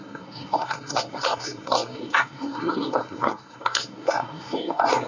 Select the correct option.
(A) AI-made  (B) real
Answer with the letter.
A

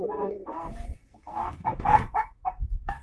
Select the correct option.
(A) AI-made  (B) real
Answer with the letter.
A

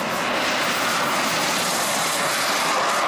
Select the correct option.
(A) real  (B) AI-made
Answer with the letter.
A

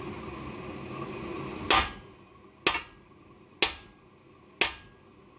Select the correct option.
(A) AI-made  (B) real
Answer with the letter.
B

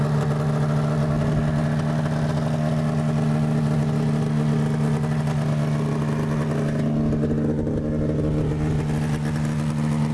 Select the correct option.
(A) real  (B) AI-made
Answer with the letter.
A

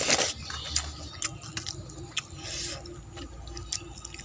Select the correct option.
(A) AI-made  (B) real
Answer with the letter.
B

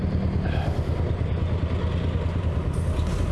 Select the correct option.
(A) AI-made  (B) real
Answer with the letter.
B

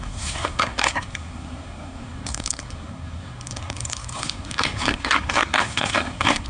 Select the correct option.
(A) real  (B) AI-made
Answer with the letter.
B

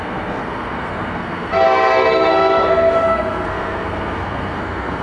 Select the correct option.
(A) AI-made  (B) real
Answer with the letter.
A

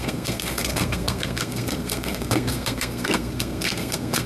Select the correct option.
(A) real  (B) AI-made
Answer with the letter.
B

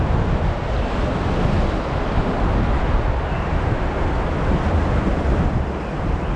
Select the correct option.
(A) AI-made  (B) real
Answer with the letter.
B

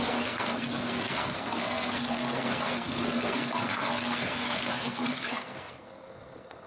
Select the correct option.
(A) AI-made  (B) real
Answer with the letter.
A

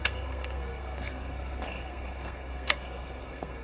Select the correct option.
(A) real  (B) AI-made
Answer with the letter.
B